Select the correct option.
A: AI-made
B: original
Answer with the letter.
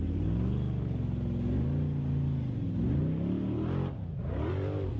B